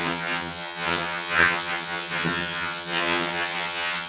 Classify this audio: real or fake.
fake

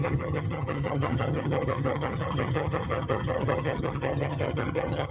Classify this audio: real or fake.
fake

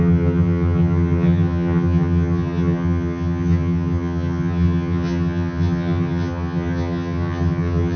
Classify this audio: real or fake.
fake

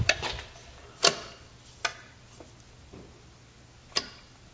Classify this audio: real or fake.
real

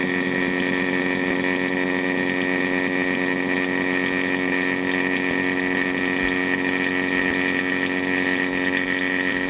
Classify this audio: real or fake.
real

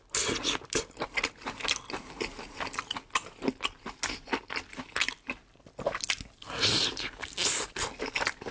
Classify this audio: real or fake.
real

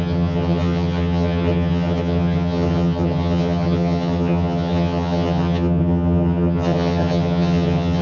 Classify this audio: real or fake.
fake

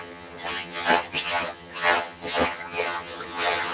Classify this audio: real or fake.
fake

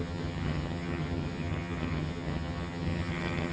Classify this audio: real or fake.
fake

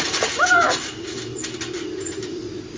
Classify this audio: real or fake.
real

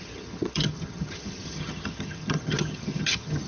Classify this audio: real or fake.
fake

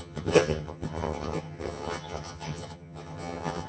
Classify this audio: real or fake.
fake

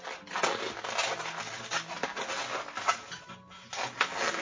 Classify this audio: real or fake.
real